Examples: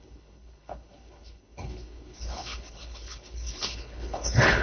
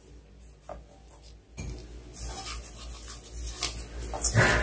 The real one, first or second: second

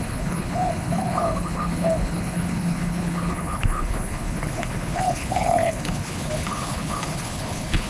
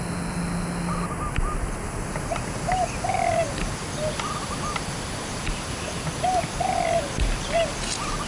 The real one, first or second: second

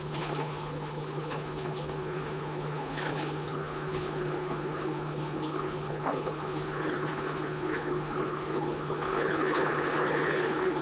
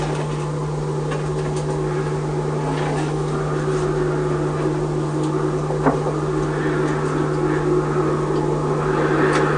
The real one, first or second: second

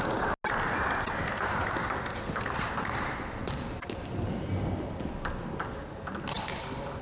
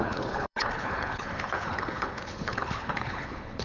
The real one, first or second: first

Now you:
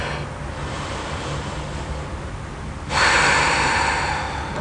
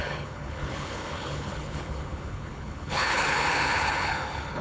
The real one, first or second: first